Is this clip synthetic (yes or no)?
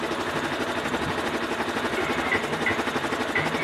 no